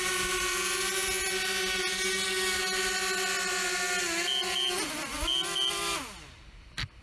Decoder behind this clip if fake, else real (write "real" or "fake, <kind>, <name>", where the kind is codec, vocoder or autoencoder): real